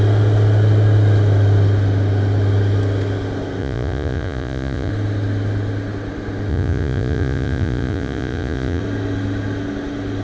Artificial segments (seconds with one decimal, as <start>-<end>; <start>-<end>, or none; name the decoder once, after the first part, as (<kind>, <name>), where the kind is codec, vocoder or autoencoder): 3.6-4.9 (vocoder, Vocos); 6.5-8.8